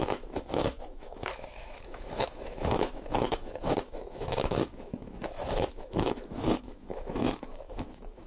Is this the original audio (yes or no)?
no